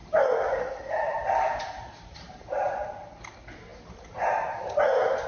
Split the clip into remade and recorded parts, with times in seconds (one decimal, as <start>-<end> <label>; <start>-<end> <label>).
0.0-3.2 remade; 3.2-3.7 recorded; 3.7-4.6 remade; 4.6-5.3 recorded